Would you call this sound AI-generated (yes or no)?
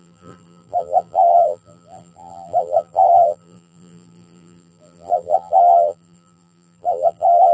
yes